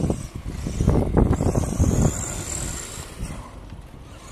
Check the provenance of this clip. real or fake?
real